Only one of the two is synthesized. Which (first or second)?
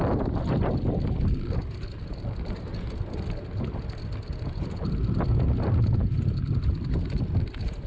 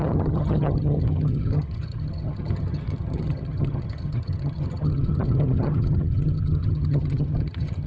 second